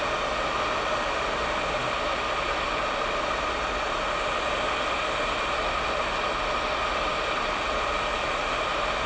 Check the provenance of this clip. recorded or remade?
recorded